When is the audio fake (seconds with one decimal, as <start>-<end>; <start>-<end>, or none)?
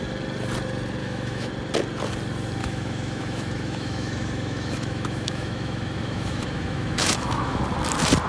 1.0-1.5; 2.6-7.6